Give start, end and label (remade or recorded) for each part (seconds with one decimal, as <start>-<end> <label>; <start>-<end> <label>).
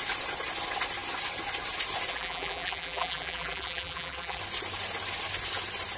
0.0-2.1 recorded; 2.1-4.4 remade; 4.4-6.0 recorded